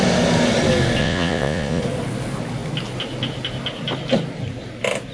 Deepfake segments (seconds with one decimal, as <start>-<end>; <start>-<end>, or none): 1.0-1.8